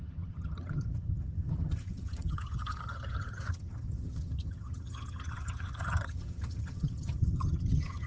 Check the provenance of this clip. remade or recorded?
remade